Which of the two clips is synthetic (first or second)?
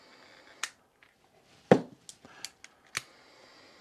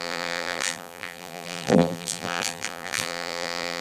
second